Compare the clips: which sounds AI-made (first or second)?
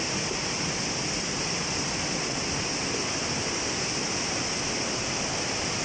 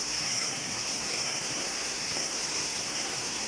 second